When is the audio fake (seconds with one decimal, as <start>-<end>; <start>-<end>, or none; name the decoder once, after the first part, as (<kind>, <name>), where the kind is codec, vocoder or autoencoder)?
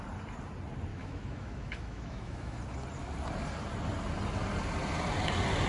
0.9-2.6 (autoencoder, DAC-VAE)